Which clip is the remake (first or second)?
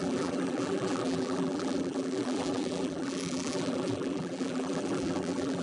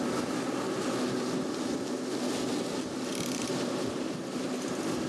first